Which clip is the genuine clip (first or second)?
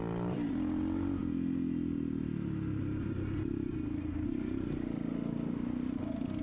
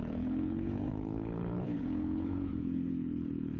first